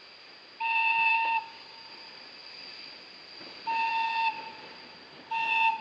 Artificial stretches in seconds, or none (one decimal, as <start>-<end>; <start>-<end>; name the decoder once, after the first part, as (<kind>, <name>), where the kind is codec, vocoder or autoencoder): 1.1-1.9 (codec, DAC)